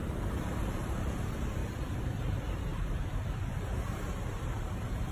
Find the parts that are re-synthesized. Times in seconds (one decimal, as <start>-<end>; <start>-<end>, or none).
0.0-1.2; 1.6-5.1